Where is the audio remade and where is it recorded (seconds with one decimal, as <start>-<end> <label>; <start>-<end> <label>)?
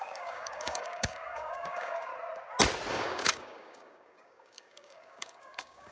0.0-2.1 remade; 2.1-2.9 recorded; 2.9-5.9 remade